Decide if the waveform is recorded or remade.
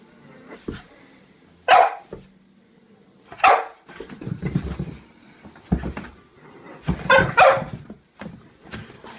recorded